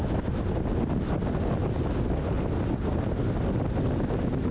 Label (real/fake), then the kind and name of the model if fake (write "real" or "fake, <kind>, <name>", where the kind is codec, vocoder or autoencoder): real